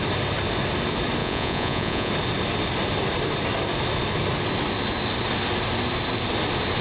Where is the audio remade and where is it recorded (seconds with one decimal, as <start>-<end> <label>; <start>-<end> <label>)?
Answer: 0.0-1.2 recorded; 1.2-2.1 remade; 2.1-6.8 recorded